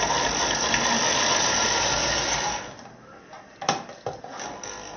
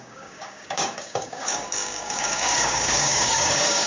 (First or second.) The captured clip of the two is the first